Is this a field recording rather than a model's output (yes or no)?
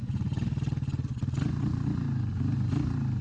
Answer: yes